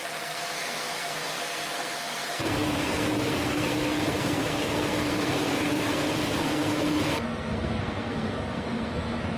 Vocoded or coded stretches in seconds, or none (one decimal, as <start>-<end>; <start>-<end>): 0.0-9.4